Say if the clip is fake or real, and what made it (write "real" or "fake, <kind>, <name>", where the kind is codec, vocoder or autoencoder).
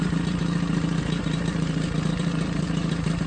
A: fake, vocoder, BigVGAN v2